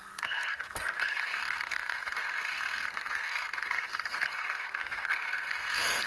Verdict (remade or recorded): remade